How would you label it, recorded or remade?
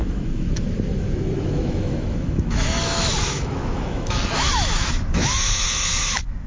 remade